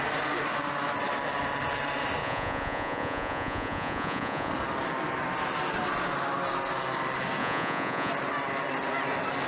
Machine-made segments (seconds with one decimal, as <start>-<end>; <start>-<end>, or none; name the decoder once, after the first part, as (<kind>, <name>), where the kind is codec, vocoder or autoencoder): 2.2-4.5 (vocoder, Vocos); 7.4-8.1